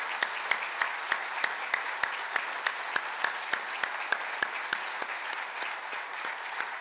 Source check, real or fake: real